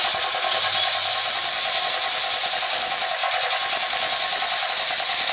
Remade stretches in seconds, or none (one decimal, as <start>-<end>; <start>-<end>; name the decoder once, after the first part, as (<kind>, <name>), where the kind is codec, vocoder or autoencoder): none